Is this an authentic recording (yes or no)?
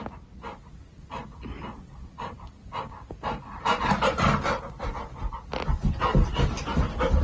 yes